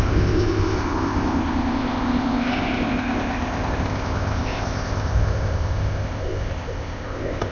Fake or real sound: fake